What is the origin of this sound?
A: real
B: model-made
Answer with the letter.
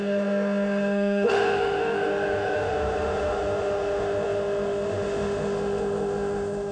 B